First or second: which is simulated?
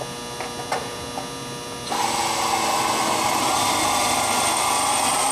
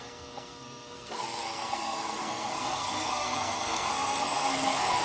second